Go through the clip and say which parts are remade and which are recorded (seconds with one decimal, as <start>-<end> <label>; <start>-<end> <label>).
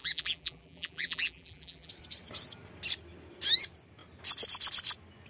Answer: 0.0-1.9 remade; 1.9-5.3 recorded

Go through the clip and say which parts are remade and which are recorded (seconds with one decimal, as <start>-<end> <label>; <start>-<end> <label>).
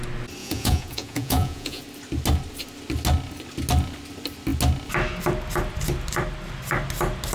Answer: 0.0-0.4 recorded; 0.4-1.8 remade; 1.8-7.3 recorded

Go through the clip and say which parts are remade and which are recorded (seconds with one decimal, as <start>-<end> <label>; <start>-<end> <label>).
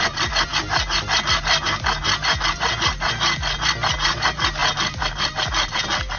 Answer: 0.0-6.2 recorded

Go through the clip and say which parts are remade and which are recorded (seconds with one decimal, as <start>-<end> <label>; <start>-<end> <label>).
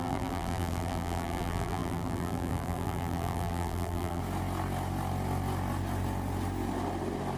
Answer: 0.0-4.2 remade; 4.2-7.4 recorded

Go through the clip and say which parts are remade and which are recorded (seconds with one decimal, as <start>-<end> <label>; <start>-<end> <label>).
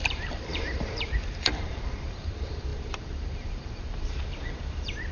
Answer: 0.0-5.1 remade